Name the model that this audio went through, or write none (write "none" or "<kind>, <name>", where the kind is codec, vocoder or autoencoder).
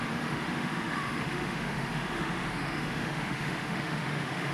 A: autoencoder, DAC-VAE